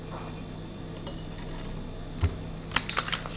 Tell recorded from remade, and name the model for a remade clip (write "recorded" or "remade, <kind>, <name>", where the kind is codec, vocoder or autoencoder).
recorded